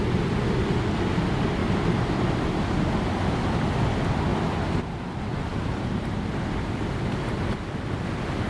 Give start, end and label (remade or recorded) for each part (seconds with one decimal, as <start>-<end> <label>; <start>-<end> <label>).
0.0-5.5 recorded; 5.5-6.2 remade; 6.2-8.5 recorded